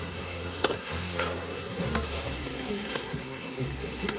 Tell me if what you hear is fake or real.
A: fake